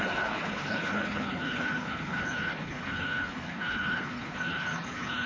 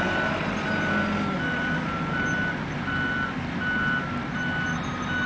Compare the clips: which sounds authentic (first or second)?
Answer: second